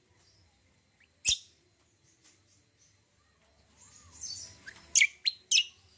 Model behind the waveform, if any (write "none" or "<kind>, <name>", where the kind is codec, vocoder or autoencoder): none